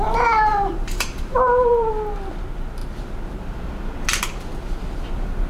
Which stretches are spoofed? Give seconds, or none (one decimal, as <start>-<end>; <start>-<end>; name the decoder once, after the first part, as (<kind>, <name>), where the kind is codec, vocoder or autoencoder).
0.5-1.9 (vocoder, BigVGAN v2)